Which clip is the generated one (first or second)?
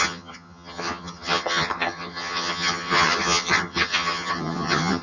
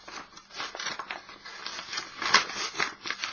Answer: first